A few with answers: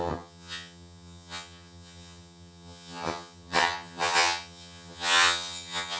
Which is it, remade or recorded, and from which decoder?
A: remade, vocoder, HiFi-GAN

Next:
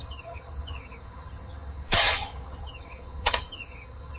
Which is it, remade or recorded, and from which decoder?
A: remade, vocoder, HiFi-GAN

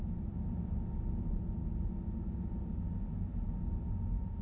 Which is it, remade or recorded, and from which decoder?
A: recorded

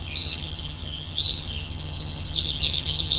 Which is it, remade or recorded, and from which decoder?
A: remade, vocoder, HiFi-GAN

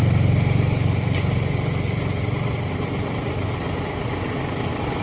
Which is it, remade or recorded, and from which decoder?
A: recorded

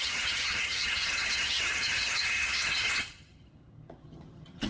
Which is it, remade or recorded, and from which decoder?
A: remade, vocoder, HiFi-GAN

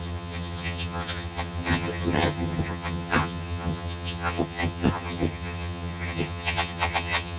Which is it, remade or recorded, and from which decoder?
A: remade, vocoder, HiFi-GAN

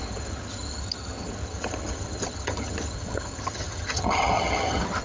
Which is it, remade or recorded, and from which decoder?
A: remade, vocoder, HiFi-GAN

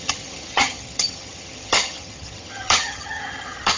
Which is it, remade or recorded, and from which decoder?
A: remade, vocoder, HiFi-GAN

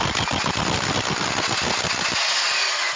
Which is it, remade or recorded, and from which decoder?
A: recorded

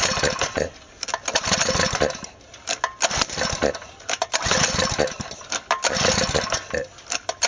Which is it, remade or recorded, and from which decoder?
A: recorded